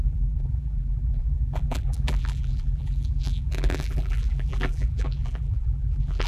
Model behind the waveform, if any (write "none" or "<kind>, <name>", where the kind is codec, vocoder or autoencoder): vocoder, BigVGAN v2